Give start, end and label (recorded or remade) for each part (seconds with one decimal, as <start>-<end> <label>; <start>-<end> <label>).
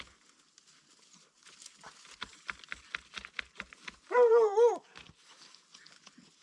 0.0-6.4 recorded